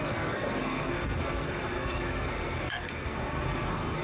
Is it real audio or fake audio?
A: fake